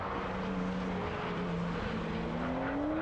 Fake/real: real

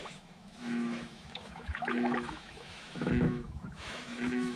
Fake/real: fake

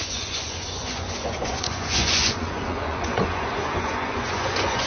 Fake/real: fake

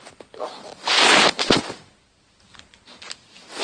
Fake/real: real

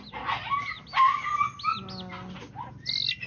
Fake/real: real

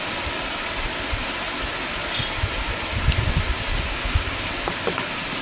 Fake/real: real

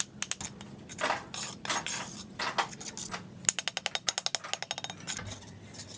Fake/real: real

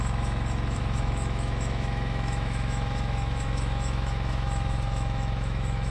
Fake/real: fake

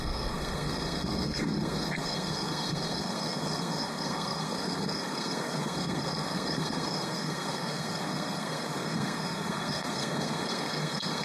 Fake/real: fake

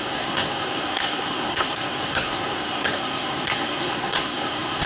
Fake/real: fake